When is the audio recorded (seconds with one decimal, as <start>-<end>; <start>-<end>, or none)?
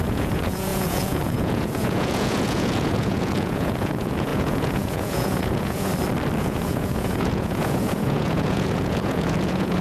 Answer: 5.9-6.4